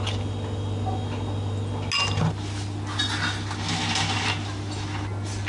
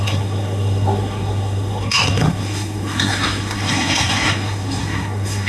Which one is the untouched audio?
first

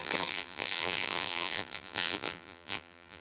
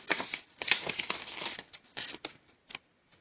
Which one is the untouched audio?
second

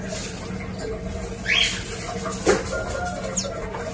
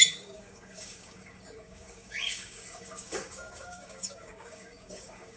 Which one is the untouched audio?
first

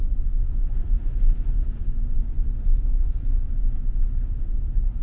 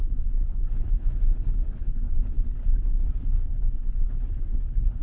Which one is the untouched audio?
first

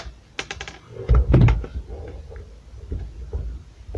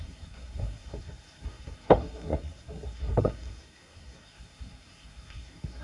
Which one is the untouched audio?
first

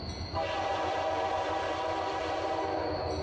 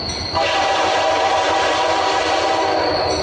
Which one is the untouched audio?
first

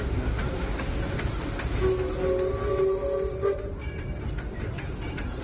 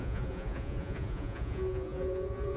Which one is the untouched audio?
first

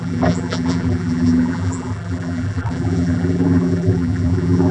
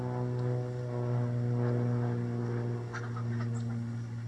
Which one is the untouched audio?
second